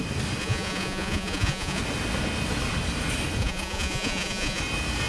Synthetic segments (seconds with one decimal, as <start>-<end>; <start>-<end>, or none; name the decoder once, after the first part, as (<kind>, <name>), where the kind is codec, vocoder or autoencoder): 0.4-1.8 (vocoder, Vocos); 3.4-4.6